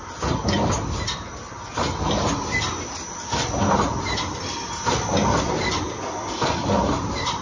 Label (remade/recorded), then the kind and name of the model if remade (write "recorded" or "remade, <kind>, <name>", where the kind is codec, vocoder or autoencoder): recorded